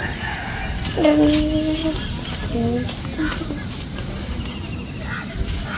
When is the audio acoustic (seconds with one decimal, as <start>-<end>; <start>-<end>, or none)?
0.0-5.8